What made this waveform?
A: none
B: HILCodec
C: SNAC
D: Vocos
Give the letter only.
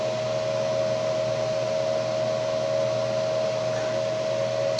A